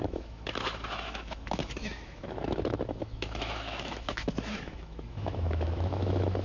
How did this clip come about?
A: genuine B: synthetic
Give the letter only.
B